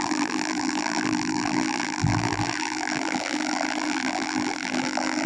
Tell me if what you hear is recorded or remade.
remade